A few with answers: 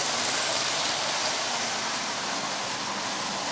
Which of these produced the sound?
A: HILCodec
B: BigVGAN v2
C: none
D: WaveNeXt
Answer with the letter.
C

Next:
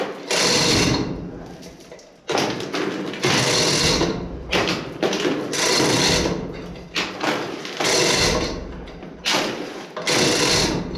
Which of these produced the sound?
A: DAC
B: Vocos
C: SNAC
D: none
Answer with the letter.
D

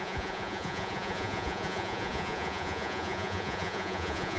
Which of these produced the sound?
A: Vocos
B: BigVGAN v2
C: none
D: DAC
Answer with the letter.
A